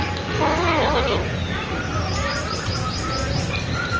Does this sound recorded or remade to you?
recorded